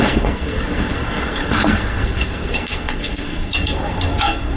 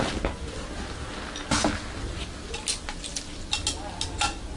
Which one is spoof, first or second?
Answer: first